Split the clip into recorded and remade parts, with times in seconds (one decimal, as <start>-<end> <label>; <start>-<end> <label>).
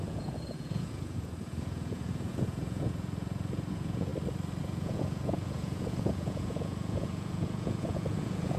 0.0-4.1 remade; 4.1-4.6 recorded; 4.6-8.6 remade